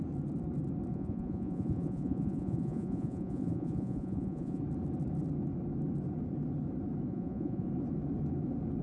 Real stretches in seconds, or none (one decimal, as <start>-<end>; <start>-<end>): 0.0-0.9; 4.6-7.1; 7.7-8.8